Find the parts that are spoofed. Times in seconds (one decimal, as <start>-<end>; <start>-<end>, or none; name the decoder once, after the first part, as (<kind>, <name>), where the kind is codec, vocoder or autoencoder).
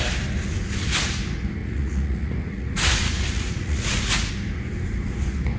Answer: 1.6-4.3 (vocoder, Vocos)